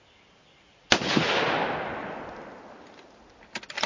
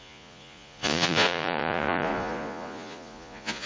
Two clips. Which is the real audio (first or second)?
first